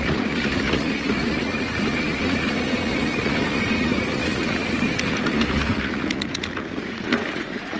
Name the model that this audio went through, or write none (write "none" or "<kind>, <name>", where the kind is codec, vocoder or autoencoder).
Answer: vocoder, Vocos